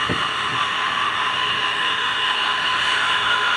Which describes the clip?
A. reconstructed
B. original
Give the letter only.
A